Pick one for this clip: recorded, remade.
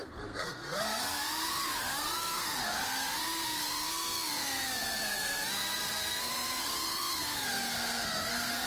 remade